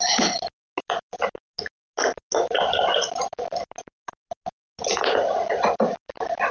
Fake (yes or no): no